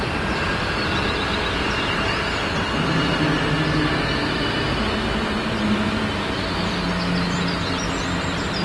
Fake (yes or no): no